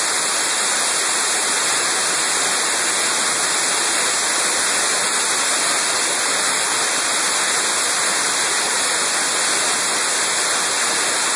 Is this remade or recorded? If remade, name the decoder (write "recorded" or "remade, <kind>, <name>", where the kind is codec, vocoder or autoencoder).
recorded